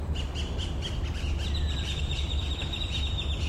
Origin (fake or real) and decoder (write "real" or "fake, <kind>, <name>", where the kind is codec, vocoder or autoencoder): real